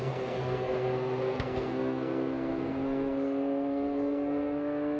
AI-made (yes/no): yes